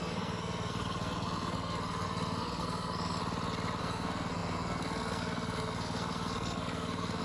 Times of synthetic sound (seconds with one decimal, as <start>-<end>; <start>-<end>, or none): 0.0-3.2; 3.8-7.2